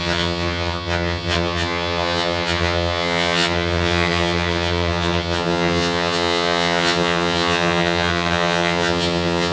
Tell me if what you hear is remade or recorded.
remade